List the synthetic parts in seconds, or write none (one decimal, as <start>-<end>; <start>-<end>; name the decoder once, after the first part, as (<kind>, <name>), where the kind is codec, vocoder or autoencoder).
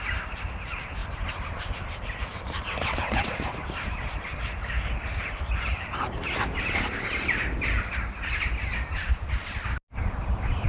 1.0-3.2 (vocoder, BigVGAN v2); 3.6-5.9